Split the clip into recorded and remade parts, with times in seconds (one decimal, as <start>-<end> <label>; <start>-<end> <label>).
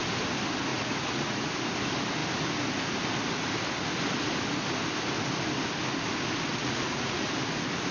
0.0-0.7 recorded; 0.7-1.5 remade; 1.5-6.6 recorded; 6.6-7.3 remade; 7.3-7.9 recorded